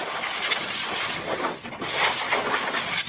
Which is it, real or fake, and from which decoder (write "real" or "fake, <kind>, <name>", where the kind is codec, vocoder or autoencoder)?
real